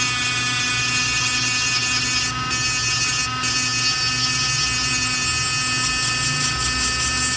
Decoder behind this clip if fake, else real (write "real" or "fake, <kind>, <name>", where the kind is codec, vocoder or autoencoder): real